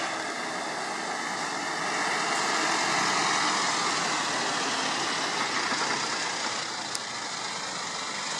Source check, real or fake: real